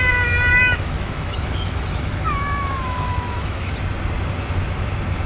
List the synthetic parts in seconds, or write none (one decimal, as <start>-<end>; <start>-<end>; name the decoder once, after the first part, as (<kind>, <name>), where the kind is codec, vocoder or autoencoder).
0.5-3.7 (autoencoder, DAC-VAE)